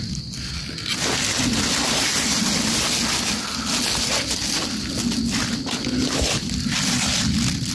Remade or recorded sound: recorded